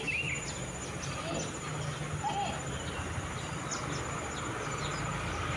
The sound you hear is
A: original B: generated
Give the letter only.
A